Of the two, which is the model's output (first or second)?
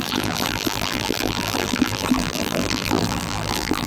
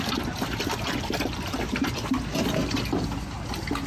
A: first